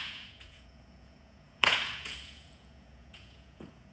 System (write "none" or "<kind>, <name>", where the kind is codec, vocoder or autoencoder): vocoder, Vocos